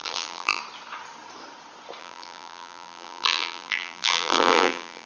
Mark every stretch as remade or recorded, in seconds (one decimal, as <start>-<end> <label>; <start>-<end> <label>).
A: 0.0-0.6 remade; 0.6-2.0 recorded; 2.0-5.1 remade